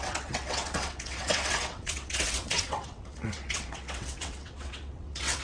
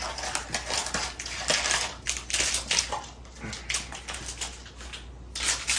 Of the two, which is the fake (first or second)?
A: first